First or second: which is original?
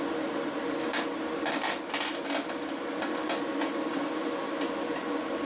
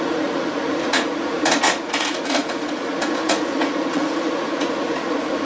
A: first